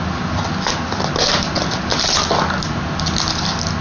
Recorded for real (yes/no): yes